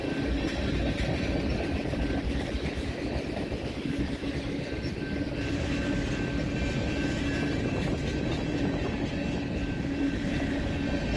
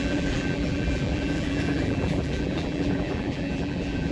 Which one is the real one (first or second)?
first